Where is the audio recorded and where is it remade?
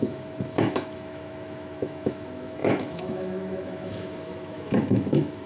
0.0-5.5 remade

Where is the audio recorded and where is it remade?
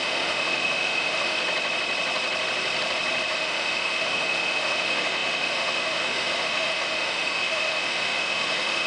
0.0-1.4 remade; 1.4-3.3 recorded; 3.3-8.9 remade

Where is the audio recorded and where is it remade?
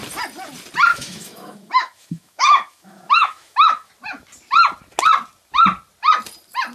0.0-0.9 recorded; 0.9-3.9 remade; 3.9-6.7 recorded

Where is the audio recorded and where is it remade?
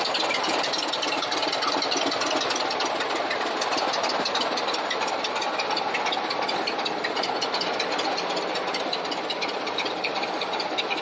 0.0-11.0 recorded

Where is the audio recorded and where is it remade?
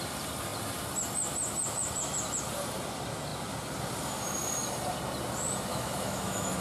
0.0-5.7 recorded; 5.7-6.6 remade